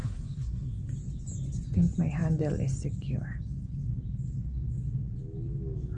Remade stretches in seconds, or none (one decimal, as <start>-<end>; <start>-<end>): 0.0-0.7